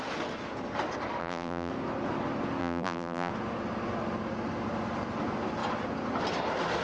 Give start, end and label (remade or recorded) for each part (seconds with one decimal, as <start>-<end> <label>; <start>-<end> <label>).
0.0-1.2 recorded; 1.2-1.7 remade; 1.7-2.6 recorded; 2.6-3.3 remade; 3.3-6.8 recorded